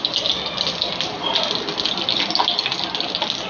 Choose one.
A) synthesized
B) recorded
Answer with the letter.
B